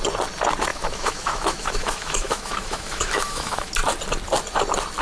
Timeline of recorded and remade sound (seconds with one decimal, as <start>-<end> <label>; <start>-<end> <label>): 0.0-0.7 recorded; 0.7-3.7 remade; 3.7-5.0 recorded